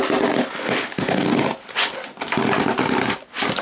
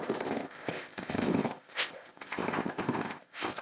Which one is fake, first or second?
second